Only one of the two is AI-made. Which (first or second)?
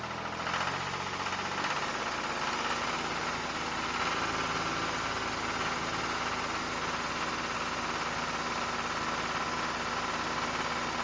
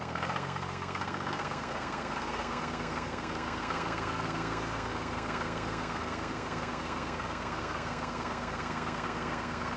second